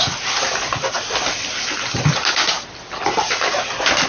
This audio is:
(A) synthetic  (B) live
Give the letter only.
B